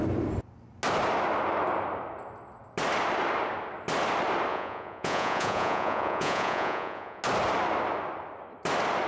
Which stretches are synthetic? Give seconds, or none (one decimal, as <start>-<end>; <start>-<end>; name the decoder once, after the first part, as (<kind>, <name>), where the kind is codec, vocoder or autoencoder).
4.5-7.2 (vocoder, Vocos)